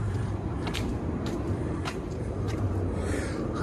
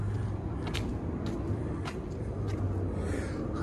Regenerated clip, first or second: first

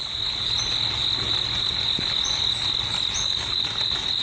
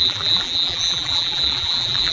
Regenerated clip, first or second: second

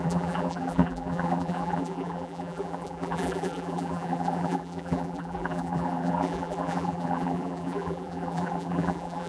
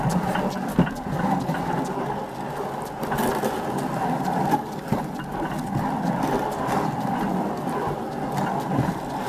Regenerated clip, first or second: first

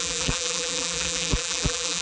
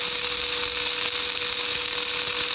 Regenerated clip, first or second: first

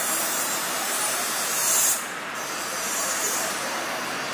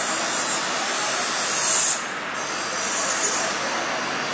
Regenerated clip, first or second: first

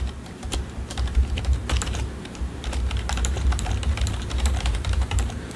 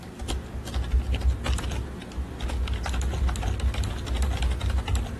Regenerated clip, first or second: first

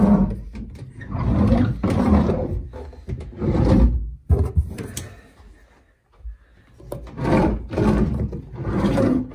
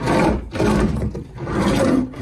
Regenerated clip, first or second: second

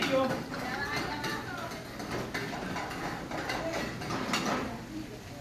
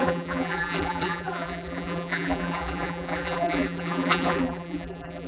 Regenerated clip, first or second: second